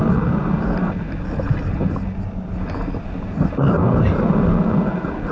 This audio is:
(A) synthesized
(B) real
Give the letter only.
B